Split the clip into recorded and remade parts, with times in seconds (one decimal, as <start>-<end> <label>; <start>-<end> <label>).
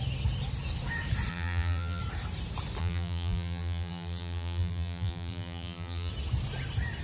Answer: 0.0-1.3 recorded; 1.3-2.0 remade; 2.0-2.8 recorded; 2.8-6.1 remade; 6.1-7.0 recorded